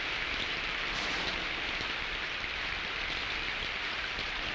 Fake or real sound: real